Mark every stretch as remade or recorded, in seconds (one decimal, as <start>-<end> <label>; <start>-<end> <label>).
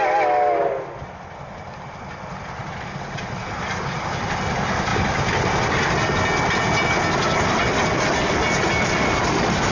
0.0-9.7 recorded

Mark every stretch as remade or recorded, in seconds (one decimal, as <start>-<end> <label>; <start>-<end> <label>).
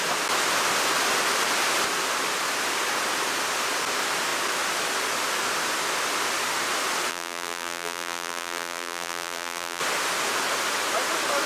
0.0-7.1 recorded; 7.1-9.8 remade; 9.8-11.5 recorded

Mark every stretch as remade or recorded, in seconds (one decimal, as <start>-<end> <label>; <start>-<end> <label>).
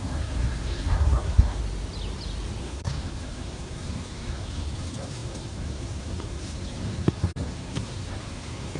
0.0-1.6 remade; 1.6-2.6 recorded; 2.6-8.8 remade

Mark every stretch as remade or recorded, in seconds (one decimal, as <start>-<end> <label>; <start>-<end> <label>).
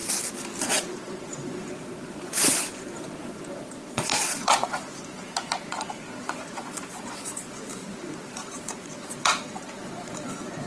0.0-0.6 recorded; 0.6-10.7 remade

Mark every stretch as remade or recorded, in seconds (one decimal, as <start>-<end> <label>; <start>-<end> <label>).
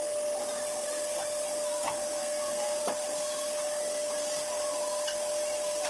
0.0-2.2 recorded; 2.2-2.8 remade; 2.8-5.9 recorded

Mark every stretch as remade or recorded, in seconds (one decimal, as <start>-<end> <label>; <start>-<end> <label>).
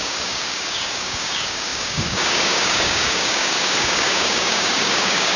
0.0-5.4 remade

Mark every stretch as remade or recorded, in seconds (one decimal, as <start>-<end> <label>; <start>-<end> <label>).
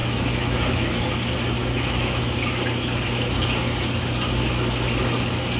0.0-1.0 remade; 1.0-1.6 recorded; 1.6-2.2 remade; 2.2-5.6 recorded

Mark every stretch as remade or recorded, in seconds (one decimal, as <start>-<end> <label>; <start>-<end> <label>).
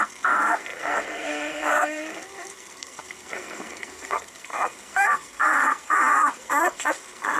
0.0-7.4 remade